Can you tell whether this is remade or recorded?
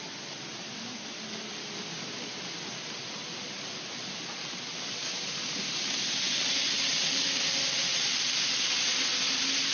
recorded